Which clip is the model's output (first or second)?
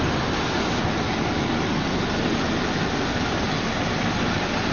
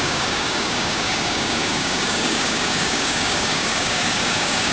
second